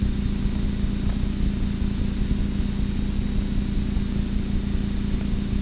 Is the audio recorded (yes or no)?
yes